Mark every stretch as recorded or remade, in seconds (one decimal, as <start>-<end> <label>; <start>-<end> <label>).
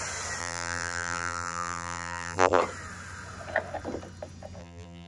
0.0-0.4 recorded; 0.4-2.6 remade; 2.6-4.6 recorded; 4.6-5.1 remade